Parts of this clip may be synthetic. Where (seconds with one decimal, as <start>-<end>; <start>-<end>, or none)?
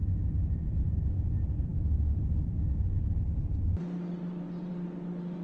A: none